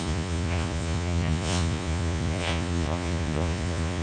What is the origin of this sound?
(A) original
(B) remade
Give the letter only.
B